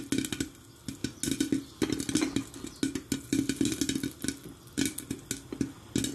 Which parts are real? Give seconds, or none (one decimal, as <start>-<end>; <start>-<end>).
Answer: 0.0-6.1